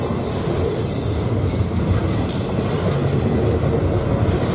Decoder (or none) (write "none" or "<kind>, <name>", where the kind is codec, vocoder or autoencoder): none